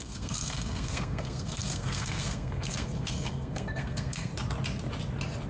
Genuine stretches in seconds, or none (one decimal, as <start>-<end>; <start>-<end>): 4.3-5.5